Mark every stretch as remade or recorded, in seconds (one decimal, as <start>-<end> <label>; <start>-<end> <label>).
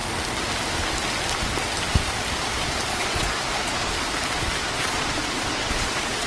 0.0-2.9 recorded; 2.9-3.9 remade; 3.9-4.6 recorded; 4.6-6.3 remade